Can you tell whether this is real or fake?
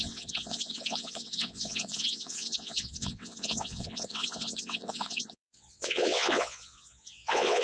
fake